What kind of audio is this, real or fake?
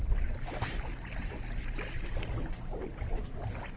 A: real